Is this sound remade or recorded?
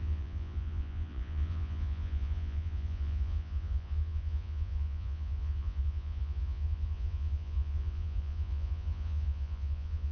remade